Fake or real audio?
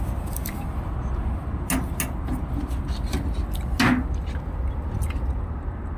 real